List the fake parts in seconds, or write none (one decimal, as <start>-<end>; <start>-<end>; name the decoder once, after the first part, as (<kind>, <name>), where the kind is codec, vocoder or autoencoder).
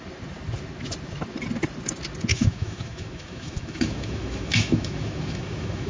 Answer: 2.3-5.9 (autoencoder, DAC-VAE)